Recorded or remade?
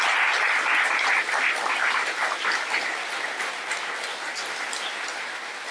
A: recorded